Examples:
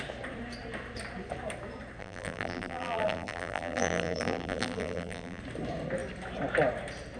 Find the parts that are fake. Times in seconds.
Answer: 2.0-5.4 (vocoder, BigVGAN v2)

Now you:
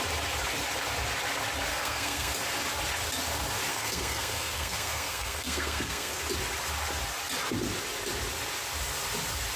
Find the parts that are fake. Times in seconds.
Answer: 1.7-2.3 (codec, SNAC); 3.7-6.2

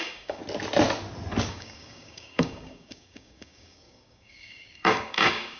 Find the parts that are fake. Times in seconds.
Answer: 0.0-0.4 (codec, DAC); 1.5-5.6